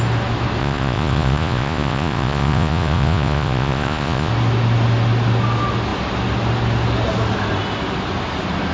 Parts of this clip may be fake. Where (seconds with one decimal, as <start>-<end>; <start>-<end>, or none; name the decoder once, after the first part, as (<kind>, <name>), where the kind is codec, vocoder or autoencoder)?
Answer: 0.6-4.3 (vocoder, Vocos)

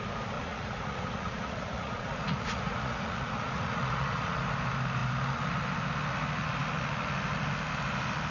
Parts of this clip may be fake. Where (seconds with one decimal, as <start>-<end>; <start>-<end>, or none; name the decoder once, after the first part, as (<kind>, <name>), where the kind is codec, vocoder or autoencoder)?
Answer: 0.4-4.4 (vocoder, Vocos)